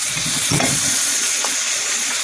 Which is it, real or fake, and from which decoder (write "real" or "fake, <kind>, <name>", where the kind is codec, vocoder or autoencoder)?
fake, vocoder, Vocos